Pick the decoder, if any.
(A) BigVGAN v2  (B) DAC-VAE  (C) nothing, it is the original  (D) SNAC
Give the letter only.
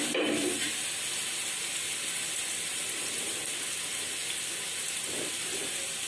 C